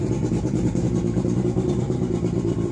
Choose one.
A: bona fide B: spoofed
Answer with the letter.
B